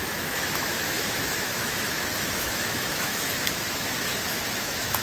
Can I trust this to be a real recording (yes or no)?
no